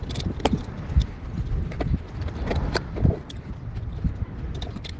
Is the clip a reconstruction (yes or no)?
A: no